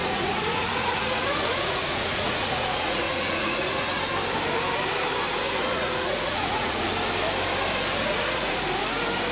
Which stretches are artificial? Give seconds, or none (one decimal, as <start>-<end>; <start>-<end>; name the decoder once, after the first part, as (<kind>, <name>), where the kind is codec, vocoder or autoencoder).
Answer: 0.0-4.0 (vocoder, Vocos); 5.6-6.9; 8.0-8.6